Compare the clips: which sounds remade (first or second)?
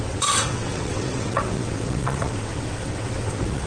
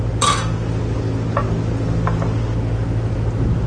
first